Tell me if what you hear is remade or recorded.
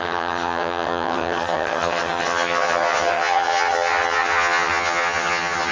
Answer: remade